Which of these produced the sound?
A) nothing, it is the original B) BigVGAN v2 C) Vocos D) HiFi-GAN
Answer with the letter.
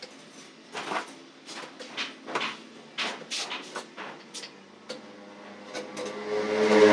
A